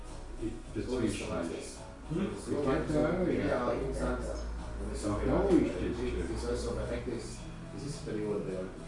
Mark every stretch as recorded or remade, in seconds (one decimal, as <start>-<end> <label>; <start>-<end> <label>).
0.0-8.9 recorded